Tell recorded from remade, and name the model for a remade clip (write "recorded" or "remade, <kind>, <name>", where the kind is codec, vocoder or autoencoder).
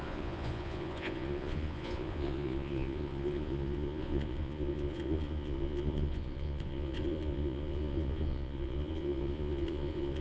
remade, vocoder, Vocos